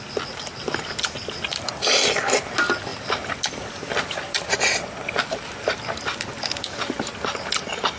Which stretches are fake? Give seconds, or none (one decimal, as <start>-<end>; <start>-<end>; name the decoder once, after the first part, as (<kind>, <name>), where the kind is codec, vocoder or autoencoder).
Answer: none